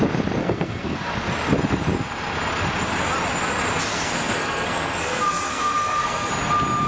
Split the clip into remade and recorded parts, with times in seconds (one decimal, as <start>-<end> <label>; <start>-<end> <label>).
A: 0.0-0.4 recorded; 0.4-1.1 remade; 1.1-3.9 recorded; 3.9-6.3 remade; 6.3-6.9 recorded